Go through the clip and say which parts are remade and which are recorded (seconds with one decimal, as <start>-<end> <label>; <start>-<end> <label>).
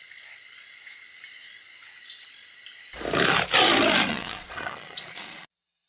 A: 0.0-0.7 remade; 0.7-4.1 recorded; 4.1-5.9 remade